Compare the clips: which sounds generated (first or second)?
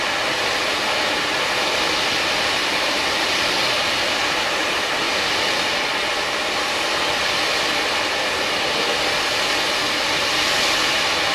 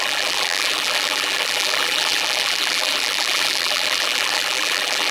second